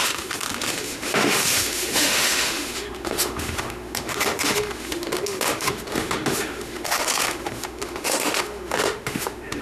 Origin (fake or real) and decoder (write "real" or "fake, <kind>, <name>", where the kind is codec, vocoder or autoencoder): fake, autoencoder, DAC-VAE